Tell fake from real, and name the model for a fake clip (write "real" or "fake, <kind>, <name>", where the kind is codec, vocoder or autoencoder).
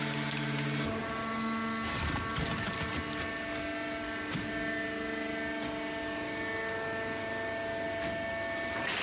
real